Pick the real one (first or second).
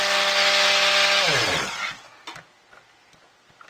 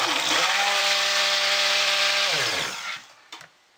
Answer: first